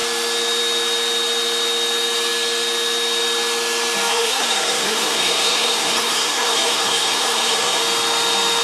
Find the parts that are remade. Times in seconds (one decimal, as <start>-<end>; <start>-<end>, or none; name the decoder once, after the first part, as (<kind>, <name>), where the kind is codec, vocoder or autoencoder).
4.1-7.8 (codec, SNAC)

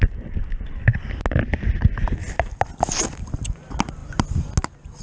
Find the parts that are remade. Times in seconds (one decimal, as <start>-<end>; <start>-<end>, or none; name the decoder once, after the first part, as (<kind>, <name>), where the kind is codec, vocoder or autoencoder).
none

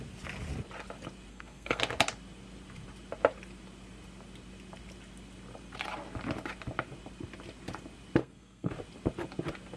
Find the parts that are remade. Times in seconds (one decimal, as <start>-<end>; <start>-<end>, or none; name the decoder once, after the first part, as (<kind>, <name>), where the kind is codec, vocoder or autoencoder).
1.3-1.8 (codec, SNAC); 8.2-8.7

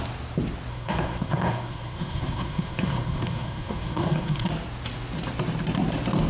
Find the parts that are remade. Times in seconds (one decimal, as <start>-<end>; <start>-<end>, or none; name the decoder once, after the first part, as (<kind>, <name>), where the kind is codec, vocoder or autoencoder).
0.7-4.5 (codec, SNAC)

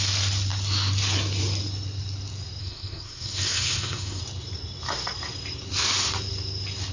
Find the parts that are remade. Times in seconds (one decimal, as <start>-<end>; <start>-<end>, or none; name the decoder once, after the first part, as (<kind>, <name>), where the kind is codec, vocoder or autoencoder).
2.6-4.2 (codec, SNAC)

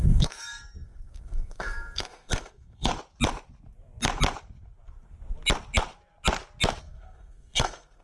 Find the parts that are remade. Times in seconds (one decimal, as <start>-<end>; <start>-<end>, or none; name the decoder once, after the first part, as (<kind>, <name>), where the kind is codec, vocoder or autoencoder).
0.0-2.9 (codec, SNAC); 6.8-8.0

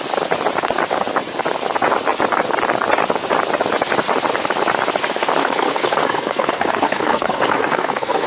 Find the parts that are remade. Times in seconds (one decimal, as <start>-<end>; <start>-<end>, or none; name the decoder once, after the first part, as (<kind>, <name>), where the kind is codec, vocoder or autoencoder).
5.4-8.3 (codec, SNAC)